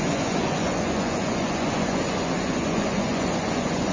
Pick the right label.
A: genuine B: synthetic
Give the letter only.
B